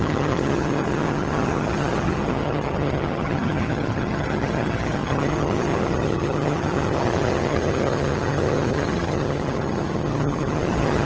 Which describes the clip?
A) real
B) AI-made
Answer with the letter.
B